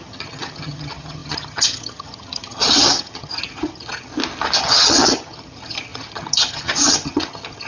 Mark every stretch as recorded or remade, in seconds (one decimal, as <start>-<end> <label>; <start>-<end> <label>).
0.0-4.1 remade; 4.1-4.6 recorded; 4.6-7.7 remade